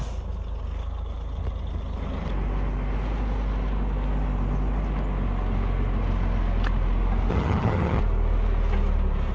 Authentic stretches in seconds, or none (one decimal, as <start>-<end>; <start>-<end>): 0.0-7.3; 8.0-9.3